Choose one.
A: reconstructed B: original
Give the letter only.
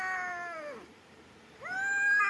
A